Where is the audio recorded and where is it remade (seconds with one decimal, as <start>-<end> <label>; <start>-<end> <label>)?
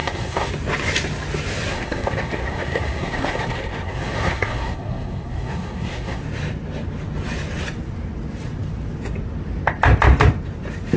0.0-0.5 remade; 0.5-1.7 recorded; 1.7-6.2 remade; 6.2-11.0 recorded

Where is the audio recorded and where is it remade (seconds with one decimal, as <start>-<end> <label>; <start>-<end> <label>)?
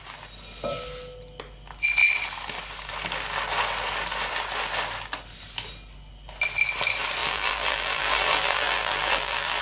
0.0-7.2 recorded; 7.2-9.6 remade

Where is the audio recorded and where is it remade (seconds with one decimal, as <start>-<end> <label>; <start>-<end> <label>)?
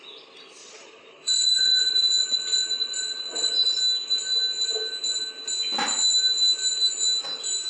0.0-0.6 recorded; 0.6-3.8 remade; 3.8-7.7 recorded